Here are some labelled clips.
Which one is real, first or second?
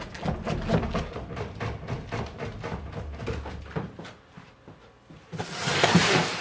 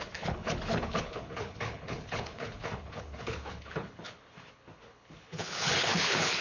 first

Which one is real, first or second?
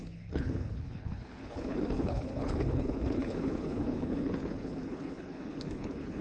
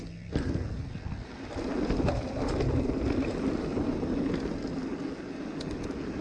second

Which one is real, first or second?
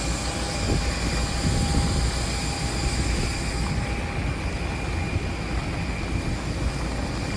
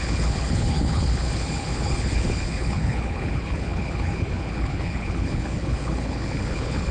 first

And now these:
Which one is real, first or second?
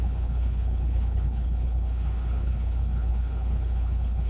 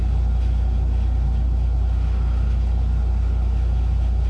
second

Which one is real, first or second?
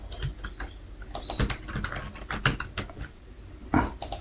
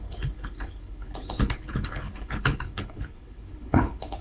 first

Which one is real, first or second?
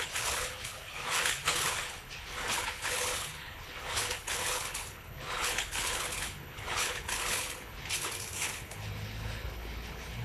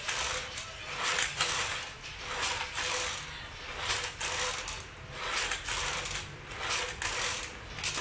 second